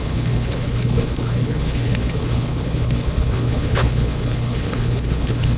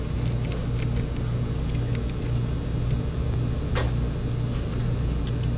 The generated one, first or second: first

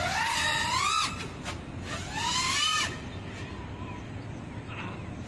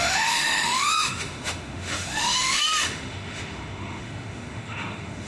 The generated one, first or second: second